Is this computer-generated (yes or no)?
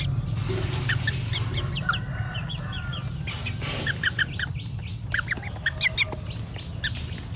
no